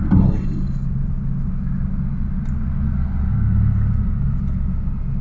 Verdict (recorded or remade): recorded